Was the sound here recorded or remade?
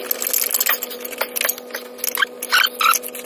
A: recorded